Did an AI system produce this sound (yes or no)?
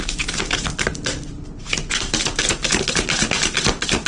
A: no